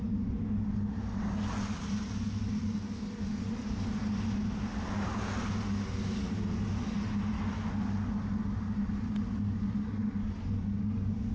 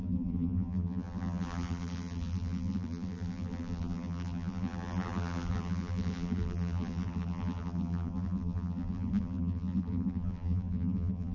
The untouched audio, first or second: first